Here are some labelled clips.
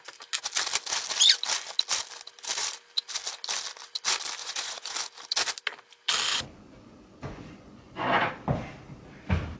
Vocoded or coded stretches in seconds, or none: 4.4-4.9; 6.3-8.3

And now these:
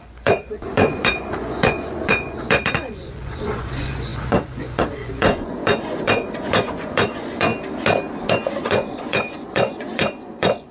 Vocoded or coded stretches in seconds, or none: 0.0-7.5; 8.3-10.7

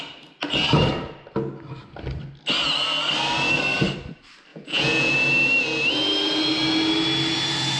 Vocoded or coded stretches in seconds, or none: 4.5-5.1

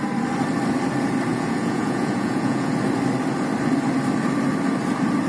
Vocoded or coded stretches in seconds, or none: 1.3-2.7

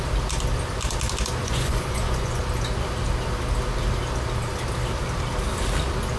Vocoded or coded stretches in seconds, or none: 1.4-2.4

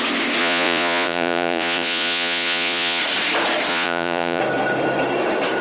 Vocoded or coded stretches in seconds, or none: 0.4-3.0; 3.7-4.4